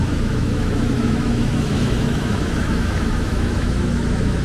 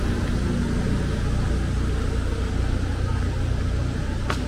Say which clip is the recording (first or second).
second